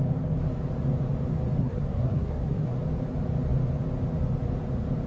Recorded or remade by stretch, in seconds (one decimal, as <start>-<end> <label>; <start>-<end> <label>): 0.0-1.6 recorded; 1.6-2.7 remade; 2.7-5.1 recorded